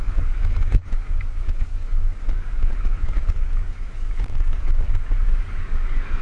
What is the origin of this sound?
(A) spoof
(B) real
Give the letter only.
A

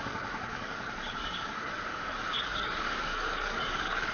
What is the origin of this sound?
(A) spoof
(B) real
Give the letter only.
A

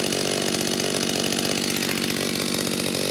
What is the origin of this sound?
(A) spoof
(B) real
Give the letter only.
B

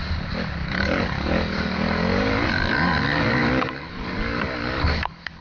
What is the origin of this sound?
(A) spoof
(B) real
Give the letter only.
A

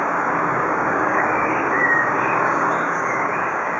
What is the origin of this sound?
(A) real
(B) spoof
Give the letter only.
B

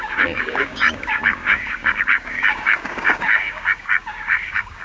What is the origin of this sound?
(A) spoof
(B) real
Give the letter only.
A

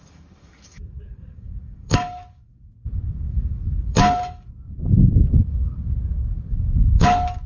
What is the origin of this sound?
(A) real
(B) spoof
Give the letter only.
B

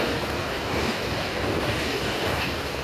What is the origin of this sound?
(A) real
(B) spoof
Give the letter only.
B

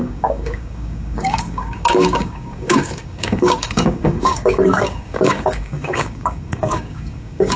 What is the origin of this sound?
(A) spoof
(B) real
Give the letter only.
A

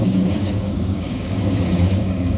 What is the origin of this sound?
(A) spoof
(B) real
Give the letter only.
A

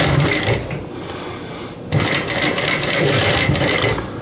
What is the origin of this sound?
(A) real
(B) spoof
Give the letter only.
A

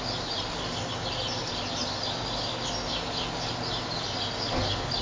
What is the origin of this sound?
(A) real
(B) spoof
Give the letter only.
A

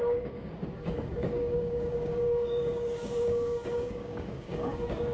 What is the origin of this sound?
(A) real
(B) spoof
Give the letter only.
B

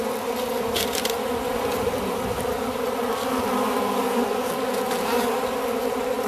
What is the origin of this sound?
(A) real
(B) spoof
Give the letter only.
A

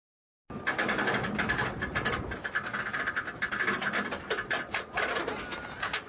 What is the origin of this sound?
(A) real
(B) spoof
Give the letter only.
A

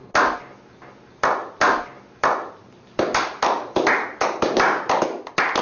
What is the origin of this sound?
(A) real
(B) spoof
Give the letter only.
A